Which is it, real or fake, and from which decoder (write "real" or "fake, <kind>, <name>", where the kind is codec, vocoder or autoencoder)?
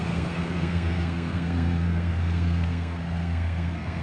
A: fake, codec, SNAC